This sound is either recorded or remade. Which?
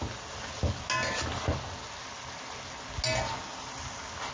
recorded